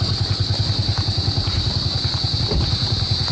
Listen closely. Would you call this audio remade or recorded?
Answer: recorded